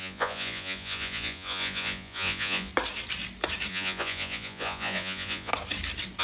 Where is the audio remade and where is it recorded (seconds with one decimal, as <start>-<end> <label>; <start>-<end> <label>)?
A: 0.0-2.7 remade; 2.7-3.7 recorded; 3.7-5.5 remade; 5.5-6.2 recorded

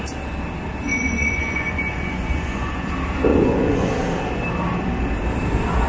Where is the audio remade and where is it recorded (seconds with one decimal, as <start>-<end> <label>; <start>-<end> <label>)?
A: 0.0-0.9 recorded; 0.9-2.9 remade; 2.9-3.3 recorded; 3.3-3.9 remade; 3.9-5.9 recorded

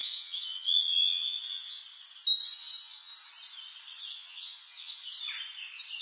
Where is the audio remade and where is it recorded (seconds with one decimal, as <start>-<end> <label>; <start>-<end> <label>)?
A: 0.0-1.8 remade; 1.8-2.4 recorded; 2.4-3.1 remade; 3.1-4.1 recorded; 4.1-5.0 remade; 5.0-6.0 recorded

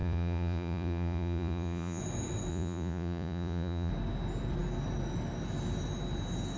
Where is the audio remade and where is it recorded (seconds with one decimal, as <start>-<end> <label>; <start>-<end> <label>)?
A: 0.0-2.0 remade; 2.0-2.5 recorded; 2.5-3.9 remade; 3.9-6.6 recorded

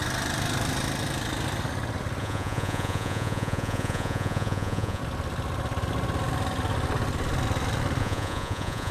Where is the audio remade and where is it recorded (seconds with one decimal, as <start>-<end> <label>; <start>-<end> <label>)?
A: 0.0-2.2 recorded; 2.2-5.0 remade; 5.0-8.0 recorded; 8.0-8.9 remade

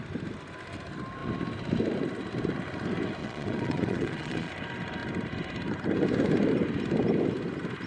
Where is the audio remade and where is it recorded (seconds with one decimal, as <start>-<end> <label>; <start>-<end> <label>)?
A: 0.0-3.2 recorded; 3.2-4.5 remade; 4.5-7.9 recorded

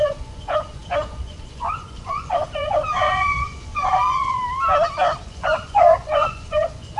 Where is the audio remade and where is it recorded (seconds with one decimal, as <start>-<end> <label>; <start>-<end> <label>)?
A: 0.0-4.4 remade; 4.4-5.2 recorded; 5.2-7.0 remade